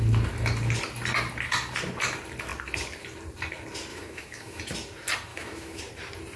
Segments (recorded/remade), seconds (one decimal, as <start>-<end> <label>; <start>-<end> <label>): 0.0-3.9 recorded; 3.9-4.6 remade; 4.6-5.3 recorded; 5.3-5.8 remade; 5.8-6.4 recorded